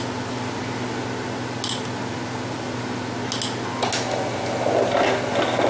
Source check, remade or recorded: recorded